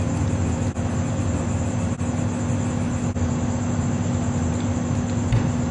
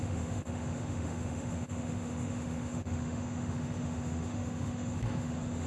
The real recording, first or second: first